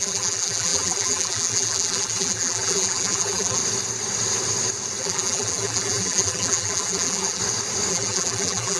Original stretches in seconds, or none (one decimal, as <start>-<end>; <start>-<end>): 3.6-5.0; 7.4-7.9